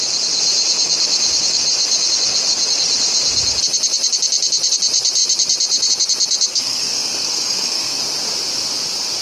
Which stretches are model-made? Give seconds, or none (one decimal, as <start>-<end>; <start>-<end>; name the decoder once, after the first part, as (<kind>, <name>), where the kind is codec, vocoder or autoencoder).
6.5-8.0 (codec, SNAC)